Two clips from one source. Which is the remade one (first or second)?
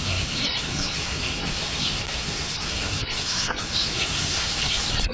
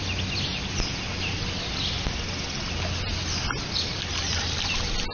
first